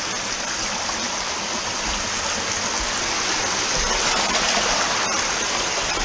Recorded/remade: recorded